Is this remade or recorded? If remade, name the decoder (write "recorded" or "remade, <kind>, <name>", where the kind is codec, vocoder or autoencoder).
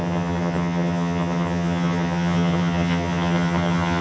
remade, vocoder, HiFi-GAN